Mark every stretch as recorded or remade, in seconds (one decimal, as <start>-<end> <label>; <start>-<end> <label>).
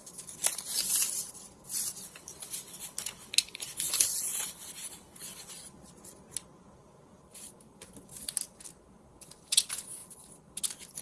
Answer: 0.0-2.0 recorded; 2.0-5.5 remade; 5.5-11.0 recorded